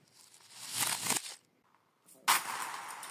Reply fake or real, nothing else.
real